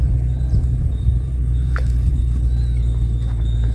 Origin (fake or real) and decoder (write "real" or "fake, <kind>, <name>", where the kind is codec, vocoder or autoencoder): real